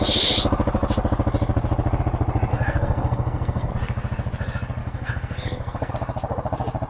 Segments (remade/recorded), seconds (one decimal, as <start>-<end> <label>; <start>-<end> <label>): 0.0-2.5 recorded; 2.5-3.7 remade; 3.7-4.8 recorded; 4.8-5.9 remade; 5.9-6.9 recorded